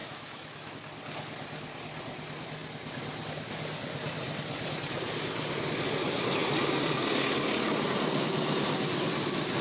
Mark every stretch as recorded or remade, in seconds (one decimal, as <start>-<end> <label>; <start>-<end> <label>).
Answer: 0.0-0.7 remade; 0.7-9.6 recorded